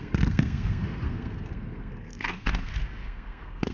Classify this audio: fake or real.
fake